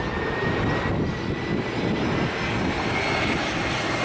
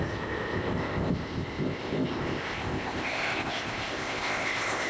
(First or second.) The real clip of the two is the first